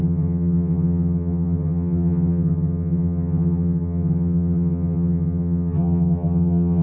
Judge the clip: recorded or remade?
remade